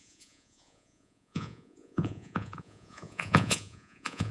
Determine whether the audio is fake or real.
fake